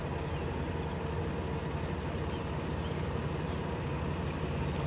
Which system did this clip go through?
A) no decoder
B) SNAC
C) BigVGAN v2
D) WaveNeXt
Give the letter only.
A